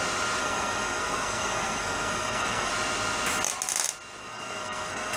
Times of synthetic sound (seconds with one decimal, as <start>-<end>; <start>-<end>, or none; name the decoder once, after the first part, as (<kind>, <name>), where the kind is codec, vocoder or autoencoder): 0.4-2.7 (codec, SNAC); 4.2-5.2